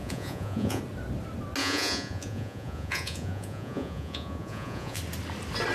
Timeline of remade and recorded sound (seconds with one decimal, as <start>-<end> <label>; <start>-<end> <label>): 0.0-0.8 remade; 0.8-1.6 recorded; 1.6-5.0 remade; 5.0-5.7 recorded